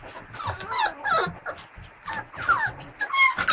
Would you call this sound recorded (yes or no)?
yes